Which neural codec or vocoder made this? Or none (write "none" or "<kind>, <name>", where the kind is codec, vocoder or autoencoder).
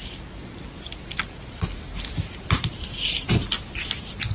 none